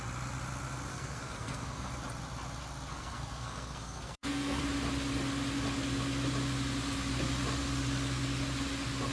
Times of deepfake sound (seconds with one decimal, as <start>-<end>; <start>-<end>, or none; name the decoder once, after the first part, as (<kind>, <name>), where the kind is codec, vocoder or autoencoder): 0.9-1.9 (codec, SNAC); 2.9-4.6